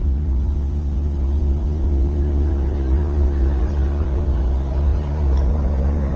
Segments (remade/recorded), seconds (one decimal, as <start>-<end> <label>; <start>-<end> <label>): 0.0-6.2 remade